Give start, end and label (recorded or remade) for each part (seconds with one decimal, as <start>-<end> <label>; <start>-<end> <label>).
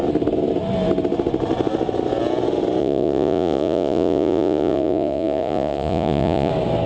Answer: 0.0-2.8 recorded; 2.8-6.5 remade; 6.5-6.9 recorded